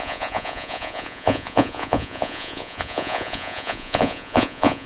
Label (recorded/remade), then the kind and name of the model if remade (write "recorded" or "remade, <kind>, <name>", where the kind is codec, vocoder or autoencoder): remade, vocoder, Vocos